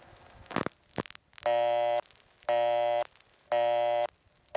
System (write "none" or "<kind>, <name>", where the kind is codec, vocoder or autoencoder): none